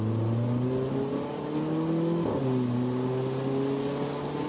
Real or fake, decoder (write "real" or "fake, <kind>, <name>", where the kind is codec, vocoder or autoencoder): real